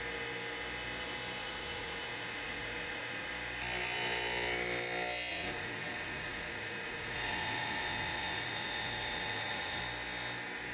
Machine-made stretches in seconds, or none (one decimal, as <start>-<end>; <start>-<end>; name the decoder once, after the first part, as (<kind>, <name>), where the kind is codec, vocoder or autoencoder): 1.4-3.3 (vocoder, Vocos); 5.3-9.8